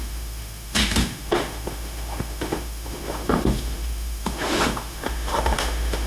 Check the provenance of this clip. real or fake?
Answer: fake